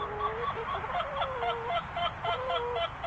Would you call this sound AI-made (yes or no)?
no